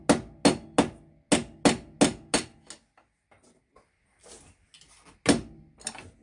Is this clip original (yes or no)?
yes